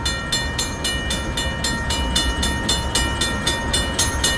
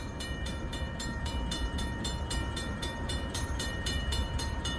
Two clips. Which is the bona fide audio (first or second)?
first